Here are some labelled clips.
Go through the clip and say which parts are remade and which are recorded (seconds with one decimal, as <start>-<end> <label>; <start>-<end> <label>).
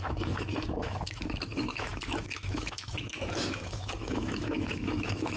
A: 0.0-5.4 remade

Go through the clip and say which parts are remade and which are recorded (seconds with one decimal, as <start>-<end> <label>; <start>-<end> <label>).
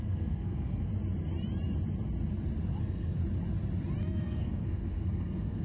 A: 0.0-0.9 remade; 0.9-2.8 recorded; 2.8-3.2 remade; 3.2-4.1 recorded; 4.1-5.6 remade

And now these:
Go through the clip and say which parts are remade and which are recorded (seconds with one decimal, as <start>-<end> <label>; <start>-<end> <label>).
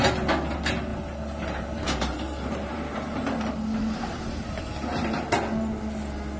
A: 0.0-0.9 recorded; 0.9-4.7 remade; 4.7-6.4 recorded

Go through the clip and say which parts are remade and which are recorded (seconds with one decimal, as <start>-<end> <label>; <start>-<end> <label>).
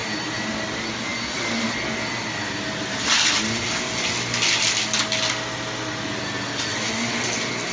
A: 0.0-7.7 recorded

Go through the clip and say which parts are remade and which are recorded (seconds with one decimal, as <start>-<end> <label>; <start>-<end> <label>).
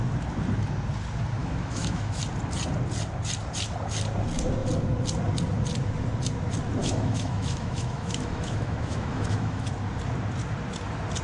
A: 0.0-1.4 recorded; 1.4-2.2 remade; 2.2-6.8 recorded; 6.8-9.7 remade; 9.7-11.2 recorded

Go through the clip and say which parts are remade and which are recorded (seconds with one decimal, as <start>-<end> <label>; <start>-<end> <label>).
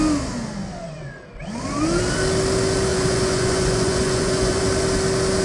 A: 0.0-0.6 recorded; 0.6-1.2 remade; 1.2-2.9 recorded; 2.9-4.6 remade; 4.6-5.4 recorded